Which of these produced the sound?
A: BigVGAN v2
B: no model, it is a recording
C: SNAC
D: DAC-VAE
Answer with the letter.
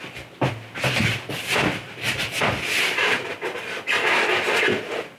B